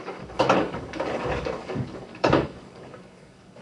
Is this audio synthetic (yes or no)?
yes